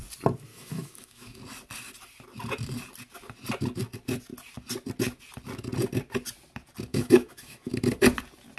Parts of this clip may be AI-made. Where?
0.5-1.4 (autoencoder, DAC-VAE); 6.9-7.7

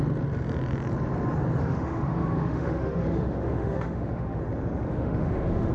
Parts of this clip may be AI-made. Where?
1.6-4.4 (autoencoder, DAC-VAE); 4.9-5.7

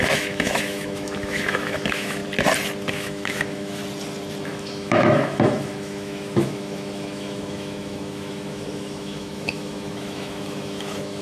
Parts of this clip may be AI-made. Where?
0.0-2.2 (autoencoder, DAC-VAE); 2.9-3.8; 4.4-11.2

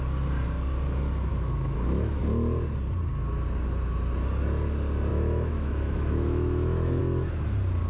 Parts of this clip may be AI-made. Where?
1.3-2.2 (autoencoder, DAC-VAE); 5.1-7.0

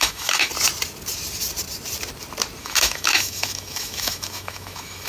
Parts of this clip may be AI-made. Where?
0.0-0.5 (autoencoder, DAC-VAE); 2.6-5.1

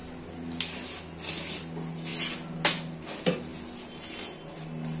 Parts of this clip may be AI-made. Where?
none